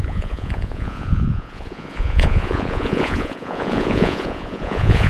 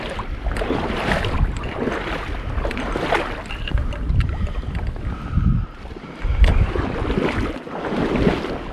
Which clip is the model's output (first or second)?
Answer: first